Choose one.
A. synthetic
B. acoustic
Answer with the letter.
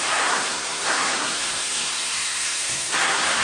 A